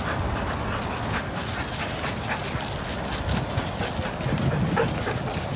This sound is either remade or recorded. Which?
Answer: recorded